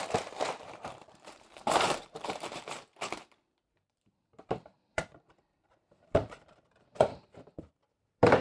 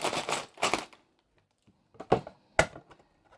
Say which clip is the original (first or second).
second